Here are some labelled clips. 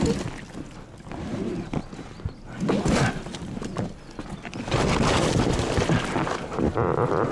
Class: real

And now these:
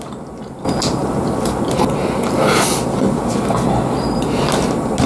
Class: real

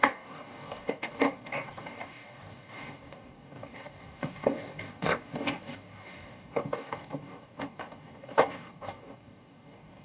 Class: fake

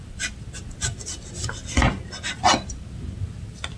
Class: real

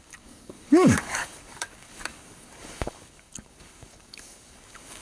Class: fake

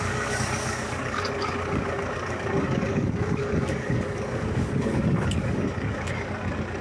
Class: fake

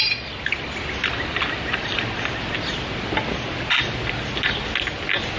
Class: real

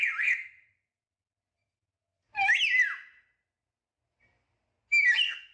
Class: real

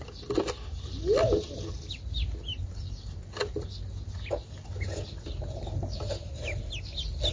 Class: real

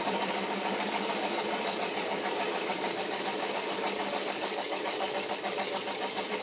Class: fake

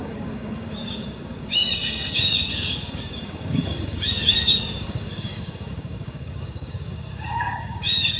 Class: fake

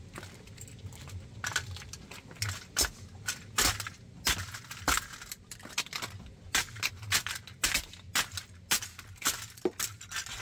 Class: real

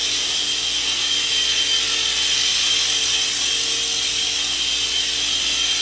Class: real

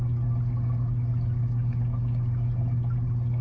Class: real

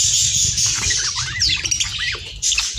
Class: real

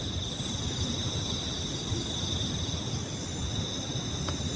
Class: real